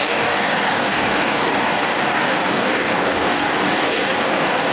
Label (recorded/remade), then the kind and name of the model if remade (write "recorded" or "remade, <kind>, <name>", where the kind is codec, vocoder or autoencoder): remade, codec, DAC